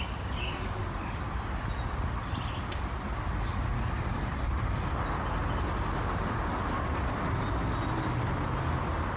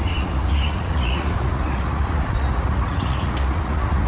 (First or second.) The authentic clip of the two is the first